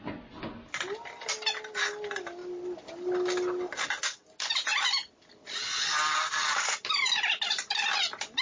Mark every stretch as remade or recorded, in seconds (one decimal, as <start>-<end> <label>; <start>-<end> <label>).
0.0-8.4 recorded